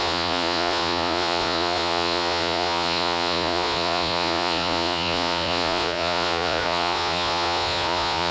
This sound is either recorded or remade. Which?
remade